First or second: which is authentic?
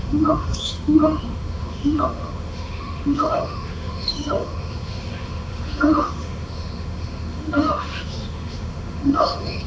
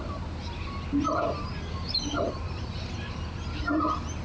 second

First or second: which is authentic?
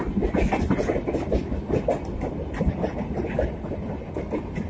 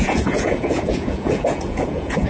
first